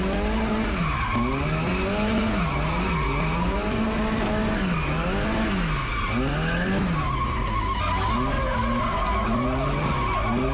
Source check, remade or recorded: recorded